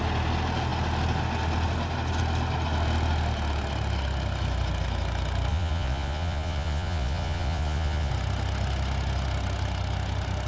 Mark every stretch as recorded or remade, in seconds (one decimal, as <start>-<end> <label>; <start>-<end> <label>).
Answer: 0.0-5.5 recorded; 5.5-8.1 remade; 8.1-10.5 recorded